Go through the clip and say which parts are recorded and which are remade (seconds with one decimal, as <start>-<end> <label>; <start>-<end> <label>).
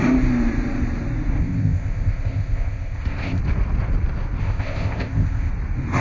0.0-1.4 recorded; 1.4-3.4 remade; 3.4-4.4 recorded; 4.4-5.5 remade; 5.5-6.0 recorded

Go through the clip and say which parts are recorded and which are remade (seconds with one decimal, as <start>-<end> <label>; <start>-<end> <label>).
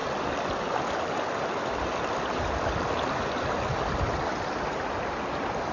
0.0-5.7 recorded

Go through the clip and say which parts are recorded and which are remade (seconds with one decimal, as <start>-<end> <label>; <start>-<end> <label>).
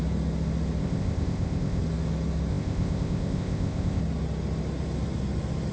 0.0-0.8 recorded; 0.8-1.8 remade; 1.8-2.5 recorded; 2.5-4.0 remade; 4.0-5.7 recorded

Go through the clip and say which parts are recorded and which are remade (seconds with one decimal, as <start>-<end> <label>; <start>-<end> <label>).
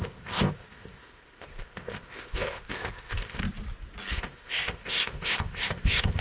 0.0-3.4 remade; 3.4-4.1 recorded; 4.1-6.2 remade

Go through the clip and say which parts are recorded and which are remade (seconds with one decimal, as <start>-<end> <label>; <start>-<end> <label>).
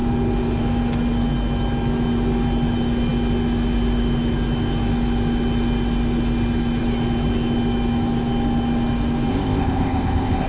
0.0-9.3 recorded; 9.3-10.5 remade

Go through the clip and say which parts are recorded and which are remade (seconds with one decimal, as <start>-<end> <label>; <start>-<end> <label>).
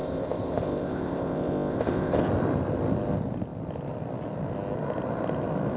0.0-2.3 remade; 2.3-5.8 recorded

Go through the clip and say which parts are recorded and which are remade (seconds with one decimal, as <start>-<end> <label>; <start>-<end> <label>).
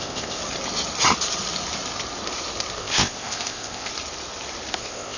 0.0-0.4 remade; 0.4-2.8 recorded; 2.8-3.9 remade; 3.9-4.8 recorded; 4.8-5.2 remade